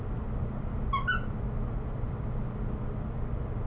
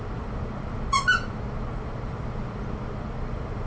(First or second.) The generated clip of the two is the second